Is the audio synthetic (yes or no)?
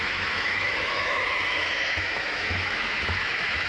yes